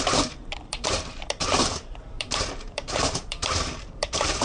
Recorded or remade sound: remade